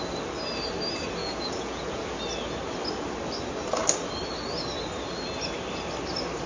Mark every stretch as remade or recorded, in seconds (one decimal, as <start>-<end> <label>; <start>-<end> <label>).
0.0-1.2 recorded; 1.2-2.0 remade; 2.0-6.5 recorded

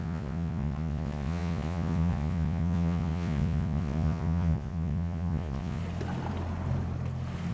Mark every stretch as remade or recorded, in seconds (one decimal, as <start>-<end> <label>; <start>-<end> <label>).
0.0-5.8 remade; 5.8-7.5 recorded

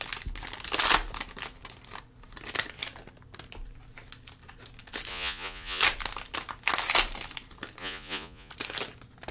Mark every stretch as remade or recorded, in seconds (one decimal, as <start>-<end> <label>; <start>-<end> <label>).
0.0-5.1 recorded; 5.1-5.8 remade; 5.8-7.8 recorded; 7.8-8.5 remade; 8.5-9.3 recorded

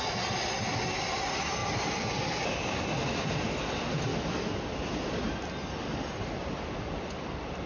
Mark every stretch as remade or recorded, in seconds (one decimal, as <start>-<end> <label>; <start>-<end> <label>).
0.0-7.7 recorded

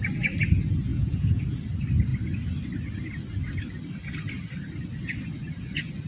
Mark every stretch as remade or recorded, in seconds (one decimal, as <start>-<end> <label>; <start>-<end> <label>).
0.0-0.9 recorded; 0.9-1.4 remade; 1.4-6.1 recorded

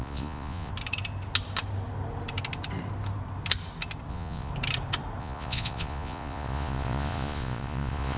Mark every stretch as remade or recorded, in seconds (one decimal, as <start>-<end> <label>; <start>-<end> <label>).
0.0-0.7 remade; 0.7-4.1 recorded; 4.1-4.5 remade; 4.5-5.2 recorded; 5.2-8.2 remade